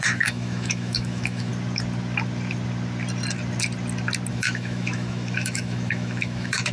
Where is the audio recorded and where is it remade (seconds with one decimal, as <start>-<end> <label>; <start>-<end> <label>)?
0.0-1.5 remade; 1.5-4.3 recorded; 4.3-6.7 remade